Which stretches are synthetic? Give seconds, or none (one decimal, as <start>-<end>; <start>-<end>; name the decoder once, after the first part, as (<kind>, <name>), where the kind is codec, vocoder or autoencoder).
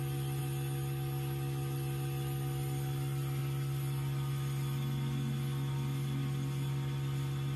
none